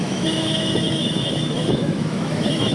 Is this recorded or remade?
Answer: remade